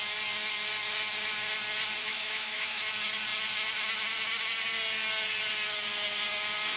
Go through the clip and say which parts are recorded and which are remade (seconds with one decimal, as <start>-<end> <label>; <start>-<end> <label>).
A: 0.0-2.0 recorded; 2.0-2.8 remade; 2.8-6.8 recorded